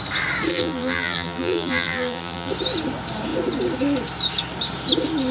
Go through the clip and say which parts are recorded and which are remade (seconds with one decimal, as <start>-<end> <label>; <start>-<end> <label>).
0.0-0.5 recorded; 0.5-2.5 remade; 2.5-5.3 recorded